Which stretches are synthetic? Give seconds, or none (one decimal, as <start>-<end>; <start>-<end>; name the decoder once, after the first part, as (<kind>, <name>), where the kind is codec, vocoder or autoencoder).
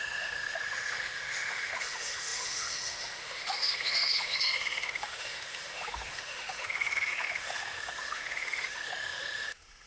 0.0-9.9 (autoencoder, DAC-VAE)